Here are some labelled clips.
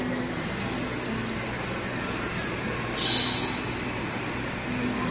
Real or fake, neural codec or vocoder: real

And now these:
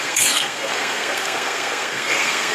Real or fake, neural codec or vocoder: fake, codec, SNAC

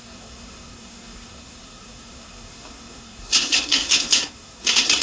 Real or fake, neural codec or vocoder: fake, codec, SNAC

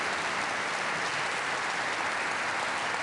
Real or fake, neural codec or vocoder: real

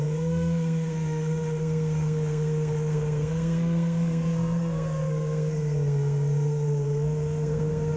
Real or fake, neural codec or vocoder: fake, codec, SNAC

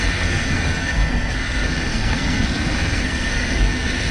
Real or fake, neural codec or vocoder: fake, codec, SNAC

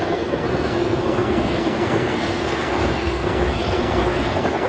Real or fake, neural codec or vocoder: fake, codec, SNAC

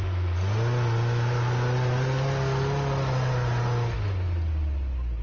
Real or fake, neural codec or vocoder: real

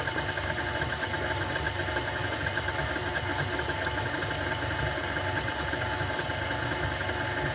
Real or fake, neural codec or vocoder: real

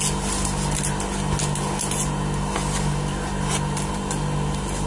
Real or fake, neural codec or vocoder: real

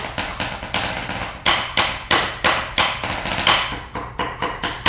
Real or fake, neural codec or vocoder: real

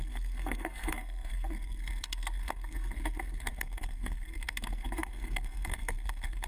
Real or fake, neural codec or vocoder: fake, codec, SNAC